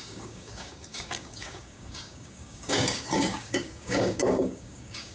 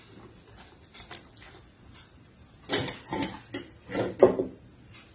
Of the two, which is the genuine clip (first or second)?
second